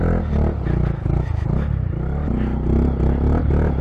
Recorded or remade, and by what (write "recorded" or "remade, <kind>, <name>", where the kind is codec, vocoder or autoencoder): recorded